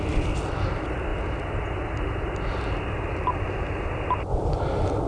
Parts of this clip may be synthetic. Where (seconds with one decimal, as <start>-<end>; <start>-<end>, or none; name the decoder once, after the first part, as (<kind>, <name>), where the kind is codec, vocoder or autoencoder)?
none